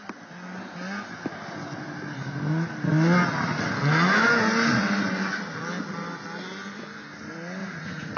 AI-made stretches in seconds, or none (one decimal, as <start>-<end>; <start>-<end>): 7.6-8.2